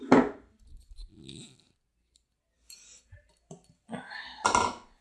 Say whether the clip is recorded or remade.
recorded